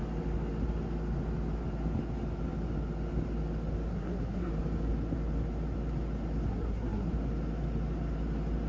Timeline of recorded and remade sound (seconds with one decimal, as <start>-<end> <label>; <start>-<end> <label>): 0.0-3.9 recorded; 3.9-4.5 remade; 4.5-6.5 recorded; 6.5-7.1 remade; 7.1-8.7 recorded